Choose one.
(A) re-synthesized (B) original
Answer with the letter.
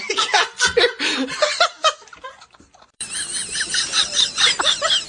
A